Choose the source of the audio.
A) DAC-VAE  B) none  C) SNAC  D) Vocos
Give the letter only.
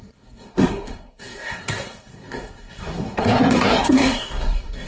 C